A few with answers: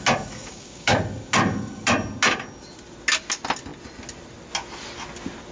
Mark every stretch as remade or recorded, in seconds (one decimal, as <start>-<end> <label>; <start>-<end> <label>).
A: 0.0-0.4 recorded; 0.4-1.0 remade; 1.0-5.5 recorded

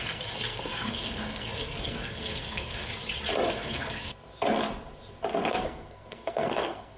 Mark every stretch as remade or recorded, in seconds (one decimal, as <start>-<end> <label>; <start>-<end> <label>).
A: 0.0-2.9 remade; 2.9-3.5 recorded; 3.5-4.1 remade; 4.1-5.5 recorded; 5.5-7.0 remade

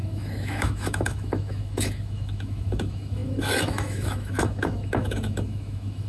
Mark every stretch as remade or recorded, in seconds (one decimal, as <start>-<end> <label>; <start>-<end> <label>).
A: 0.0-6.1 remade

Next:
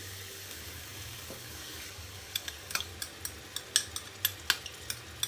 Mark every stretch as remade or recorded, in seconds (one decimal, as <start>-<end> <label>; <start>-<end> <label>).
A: 0.0-2.9 remade; 2.9-5.3 recorded